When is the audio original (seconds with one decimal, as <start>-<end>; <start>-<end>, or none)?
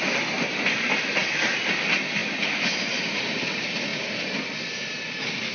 0.0-5.5